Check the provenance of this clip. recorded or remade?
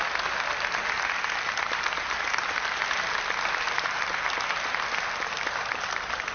recorded